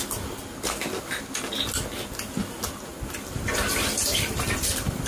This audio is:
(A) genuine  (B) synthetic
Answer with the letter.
A